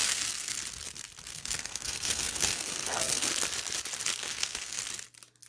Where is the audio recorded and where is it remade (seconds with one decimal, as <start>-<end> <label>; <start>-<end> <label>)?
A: 0.0-0.6 remade; 0.6-1.3 recorded; 1.3-3.3 remade; 3.3-4.2 recorded; 4.2-4.8 remade; 4.8-5.5 recorded

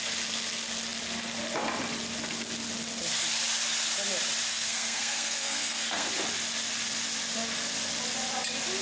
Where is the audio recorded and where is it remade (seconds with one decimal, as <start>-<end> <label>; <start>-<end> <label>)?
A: 0.0-4.5 recorded; 4.5-6.1 remade; 6.1-8.8 recorded

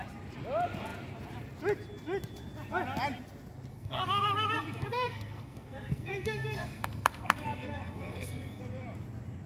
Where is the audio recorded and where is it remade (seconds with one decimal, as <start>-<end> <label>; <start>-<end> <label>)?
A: 0.0-3.7 recorded; 3.7-8.6 remade; 8.6-9.5 recorded

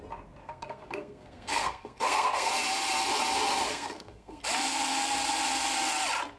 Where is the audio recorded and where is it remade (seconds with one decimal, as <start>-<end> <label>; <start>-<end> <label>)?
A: 0.0-0.4 recorded; 0.4-2.5 remade; 2.5-3.7 recorded; 3.7-4.4 remade; 4.4-6.4 recorded

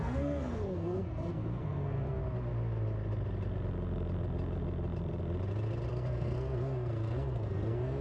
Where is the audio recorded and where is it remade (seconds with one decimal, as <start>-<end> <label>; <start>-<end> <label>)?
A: 0.0-2.2 remade; 2.2-5.9 recorded; 5.9-8.0 remade

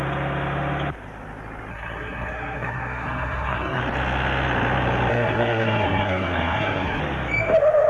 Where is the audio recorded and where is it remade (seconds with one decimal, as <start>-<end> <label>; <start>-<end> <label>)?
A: 0.0-1.7 recorded; 1.7-3.8 remade; 3.8-5.1 recorded; 5.1-7.0 remade; 7.0-7.9 recorded

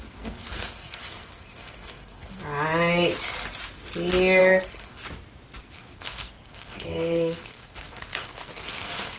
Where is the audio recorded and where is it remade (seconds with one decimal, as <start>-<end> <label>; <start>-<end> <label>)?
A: 0.0-2.4 remade; 2.4-4.4 recorded; 4.4-5.0 remade; 5.0-5.6 recorded; 5.6-9.2 remade